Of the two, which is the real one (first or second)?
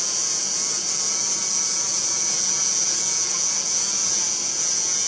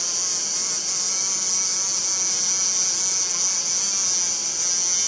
second